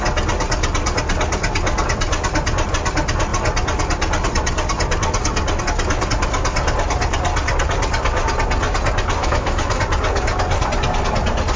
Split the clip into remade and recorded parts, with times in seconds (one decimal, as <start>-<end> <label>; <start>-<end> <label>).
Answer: 0.0-9.2 recorded; 9.2-9.8 remade; 9.8-11.6 recorded